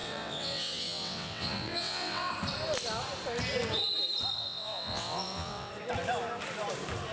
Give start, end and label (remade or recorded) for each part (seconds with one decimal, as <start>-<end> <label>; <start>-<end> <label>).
0.0-2.3 remade; 2.3-4.4 recorded; 4.4-5.7 remade; 5.7-7.1 recorded